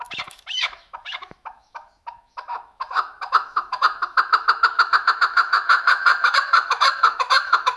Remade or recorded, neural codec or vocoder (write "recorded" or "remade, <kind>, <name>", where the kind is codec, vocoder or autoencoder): remade, autoencoder, DAC-VAE